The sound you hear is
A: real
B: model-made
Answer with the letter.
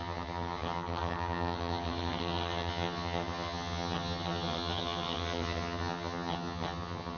B